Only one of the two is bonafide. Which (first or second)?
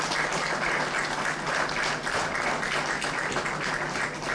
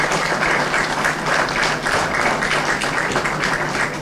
first